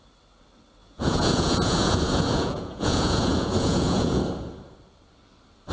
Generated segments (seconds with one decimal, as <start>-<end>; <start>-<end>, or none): 0.8-4.2